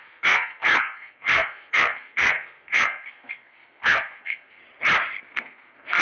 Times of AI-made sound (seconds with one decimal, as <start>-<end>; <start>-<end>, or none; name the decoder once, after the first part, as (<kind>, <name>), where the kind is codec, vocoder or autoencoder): 0.0-4.6 (codec, SNAC); 5.3-6.0